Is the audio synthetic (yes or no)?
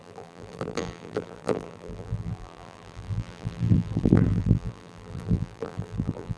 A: yes